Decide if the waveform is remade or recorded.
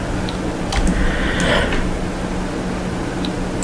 recorded